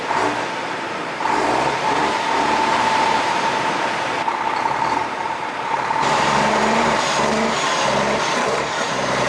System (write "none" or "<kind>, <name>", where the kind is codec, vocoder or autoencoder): vocoder, BigVGAN v2